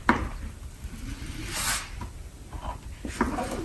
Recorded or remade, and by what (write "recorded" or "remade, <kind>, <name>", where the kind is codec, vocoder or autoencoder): recorded